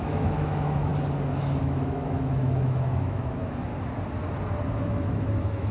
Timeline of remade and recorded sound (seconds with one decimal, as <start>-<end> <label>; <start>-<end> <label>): 0.0-0.9 remade; 0.9-1.6 recorded; 1.6-3.7 remade; 3.7-4.8 recorded; 4.8-5.7 remade